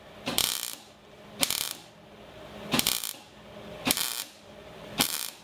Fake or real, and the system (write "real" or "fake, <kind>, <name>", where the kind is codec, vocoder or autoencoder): fake, vocoder, BigVGAN v2